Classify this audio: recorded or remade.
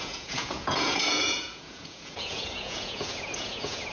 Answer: remade